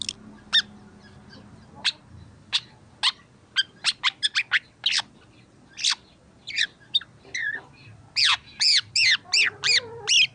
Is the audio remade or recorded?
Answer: recorded